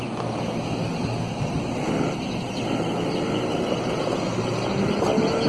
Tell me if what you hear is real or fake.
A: real